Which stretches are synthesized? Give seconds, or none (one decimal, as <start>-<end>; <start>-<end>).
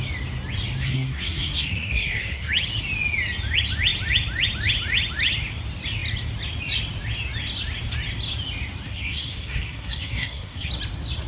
0.8-2.5; 8.9-10.7